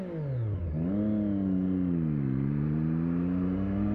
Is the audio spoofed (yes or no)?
no